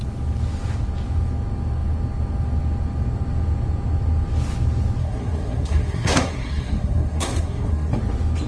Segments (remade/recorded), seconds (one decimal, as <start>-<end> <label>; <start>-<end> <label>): 0.0-5.0 recorded; 5.0-8.0 remade; 8.0-8.5 recorded